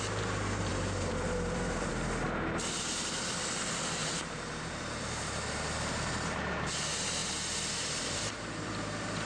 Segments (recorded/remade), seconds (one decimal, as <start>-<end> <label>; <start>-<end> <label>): 0.0-0.7 recorded; 0.7-1.9 remade; 1.9-4.0 recorded; 4.0-6.1 remade; 6.1-7.2 recorded; 7.2-9.3 remade